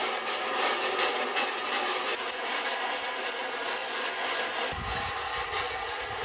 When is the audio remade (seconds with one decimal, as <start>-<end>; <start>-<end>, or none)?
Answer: 3.8-4.4